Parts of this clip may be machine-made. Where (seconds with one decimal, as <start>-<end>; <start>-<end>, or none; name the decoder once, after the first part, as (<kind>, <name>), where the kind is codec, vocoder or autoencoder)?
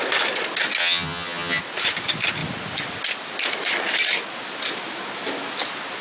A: 0.8-1.6 (vocoder, HiFi-GAN)